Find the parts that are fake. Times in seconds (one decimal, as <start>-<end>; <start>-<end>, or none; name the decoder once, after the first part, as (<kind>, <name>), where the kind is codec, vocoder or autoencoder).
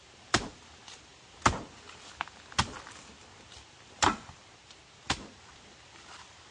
none